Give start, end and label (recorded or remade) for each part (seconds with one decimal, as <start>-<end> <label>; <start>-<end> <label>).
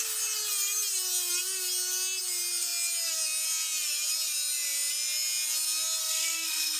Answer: 0.0-6.0 recorded; 6.0-6.8 remade